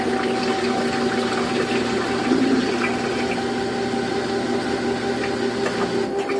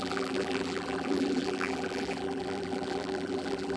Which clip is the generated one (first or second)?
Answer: second